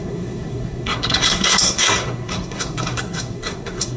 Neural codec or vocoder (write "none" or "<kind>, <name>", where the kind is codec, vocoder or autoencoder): codec, SNAC